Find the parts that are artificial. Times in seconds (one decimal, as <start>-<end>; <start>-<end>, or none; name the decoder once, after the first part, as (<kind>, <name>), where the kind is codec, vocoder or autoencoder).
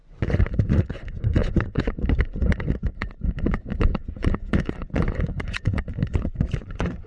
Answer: 0.0-7.1 (vocoder, Vocos)